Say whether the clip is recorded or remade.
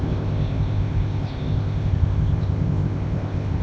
remade